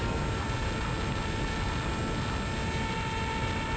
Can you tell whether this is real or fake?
real